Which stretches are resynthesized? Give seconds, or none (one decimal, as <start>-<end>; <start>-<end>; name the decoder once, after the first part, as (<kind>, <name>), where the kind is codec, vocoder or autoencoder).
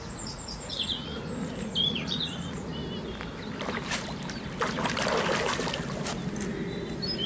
0.0-1.2 (vocoder, Vocos); 1.9-2.8